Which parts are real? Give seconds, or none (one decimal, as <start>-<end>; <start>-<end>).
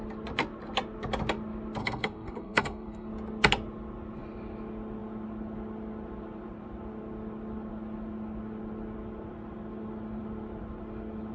0.0-1.8; 3.1-11.3